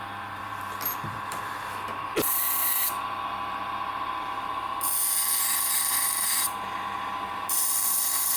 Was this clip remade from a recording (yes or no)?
yes